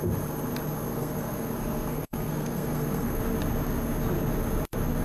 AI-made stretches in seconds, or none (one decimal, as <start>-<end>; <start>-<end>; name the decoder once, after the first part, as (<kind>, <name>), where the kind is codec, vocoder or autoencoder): 0.9-3.2 (codec, SNAC)